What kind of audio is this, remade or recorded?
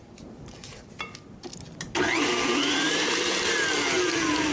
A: recorded